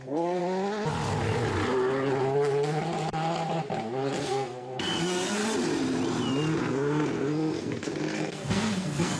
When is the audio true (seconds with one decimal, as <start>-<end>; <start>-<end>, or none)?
0.4-4.2; 5.4-6.6